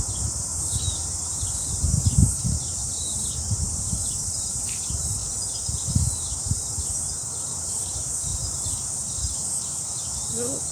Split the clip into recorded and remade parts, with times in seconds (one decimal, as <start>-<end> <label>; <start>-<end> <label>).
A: 0.0-5.2 remade; 5.2-6.2 recorded; 6.2-8.3 remade; 8.3-10.7 recorded